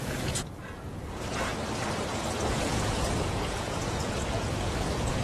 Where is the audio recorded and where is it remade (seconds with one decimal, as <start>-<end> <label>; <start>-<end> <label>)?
0.0-1.5 remade; 1.5-2.1 recorded; 2.1-5.2 remade